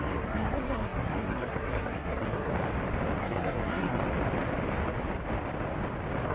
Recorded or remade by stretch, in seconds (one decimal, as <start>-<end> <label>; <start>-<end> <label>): 0.0-2.5 remade; 2.5-3.2 recorded; 3.2-4.0 remade; 4.0-6.3 recorded